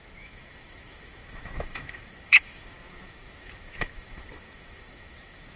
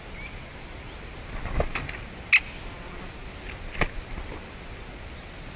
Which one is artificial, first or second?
first